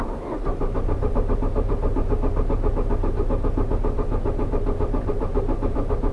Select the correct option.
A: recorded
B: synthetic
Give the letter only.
B